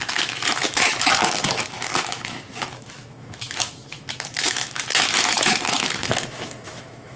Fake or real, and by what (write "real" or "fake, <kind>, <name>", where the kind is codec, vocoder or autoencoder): fake, autoencoder, DAC-VAE